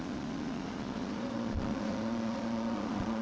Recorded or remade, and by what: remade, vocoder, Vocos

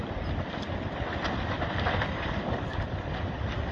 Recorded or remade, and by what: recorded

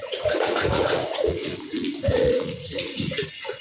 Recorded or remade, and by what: remade, vocoder, Vocos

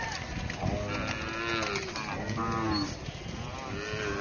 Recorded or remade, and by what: recorded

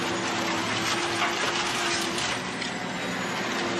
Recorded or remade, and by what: recorded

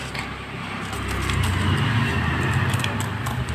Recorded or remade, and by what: recorded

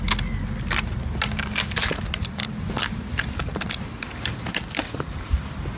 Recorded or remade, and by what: recorded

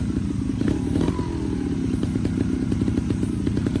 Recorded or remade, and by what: recorded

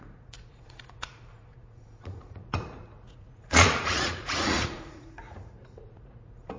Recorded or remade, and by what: remade, vocoder, Vocos